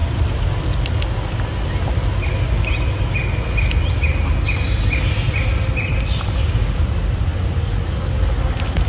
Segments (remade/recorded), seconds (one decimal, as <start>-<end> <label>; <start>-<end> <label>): 0.0-8.9 recorded